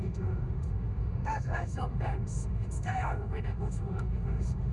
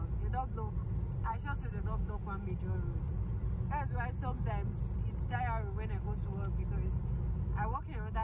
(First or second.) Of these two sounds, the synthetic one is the first